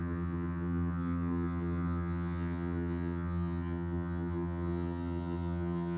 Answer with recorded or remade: remade